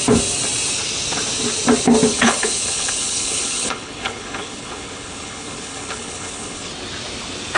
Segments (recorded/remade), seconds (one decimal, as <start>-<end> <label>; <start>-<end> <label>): 0.0-2.1 recorded; 2.1-6.7 remade; 6.7-7.6 recorded